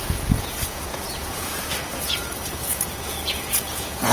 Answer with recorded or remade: remade